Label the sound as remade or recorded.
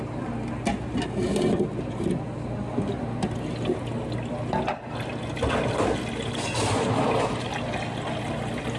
recorded